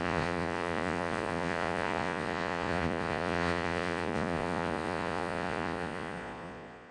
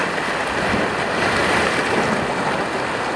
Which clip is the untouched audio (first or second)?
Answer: second